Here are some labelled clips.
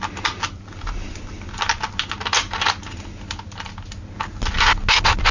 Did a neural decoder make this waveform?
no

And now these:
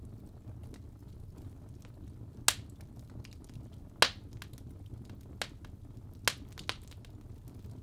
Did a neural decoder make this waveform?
no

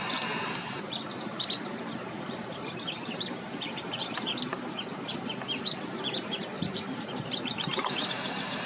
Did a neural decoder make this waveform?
yes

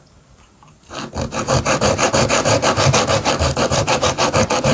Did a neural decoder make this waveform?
yes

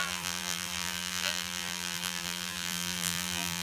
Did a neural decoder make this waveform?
yes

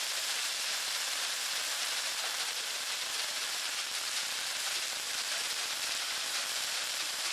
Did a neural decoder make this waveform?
yes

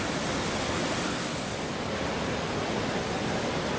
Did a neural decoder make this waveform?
yes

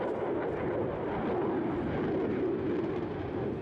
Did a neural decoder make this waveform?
no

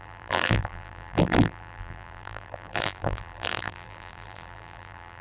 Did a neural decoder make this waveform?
yes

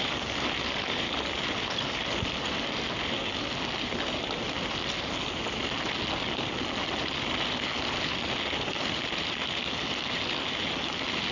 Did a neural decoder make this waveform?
no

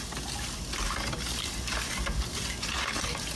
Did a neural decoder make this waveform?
no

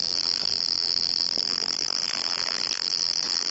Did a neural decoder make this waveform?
yes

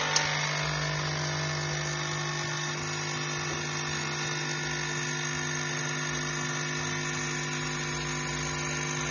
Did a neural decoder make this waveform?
no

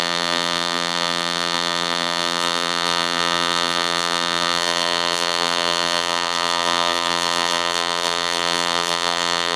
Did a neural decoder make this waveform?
yes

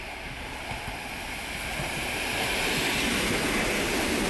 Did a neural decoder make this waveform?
no